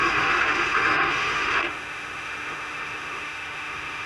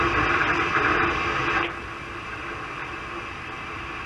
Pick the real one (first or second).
second